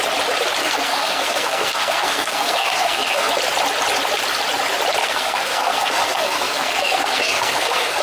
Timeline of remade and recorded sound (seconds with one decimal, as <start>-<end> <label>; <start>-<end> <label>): 0.0-0.6 recorded; 0.6-3.3 remade; 3.3-5.0 recorded; 5.0-8.0 remade